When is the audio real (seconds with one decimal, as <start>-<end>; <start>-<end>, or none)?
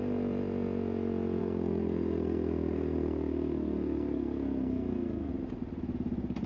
0.0-1.4; 5.3-6.5